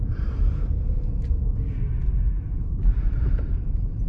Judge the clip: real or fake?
fake